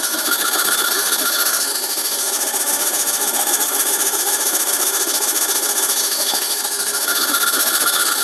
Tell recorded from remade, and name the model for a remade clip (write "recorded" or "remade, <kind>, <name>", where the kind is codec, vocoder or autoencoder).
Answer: remade, autoencoder, DAC-VAE